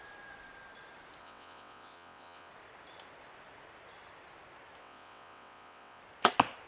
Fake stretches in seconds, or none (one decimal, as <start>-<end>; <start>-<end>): 1.2-2.5; 4.8-6.0